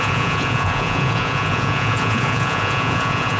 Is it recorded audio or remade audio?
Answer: remade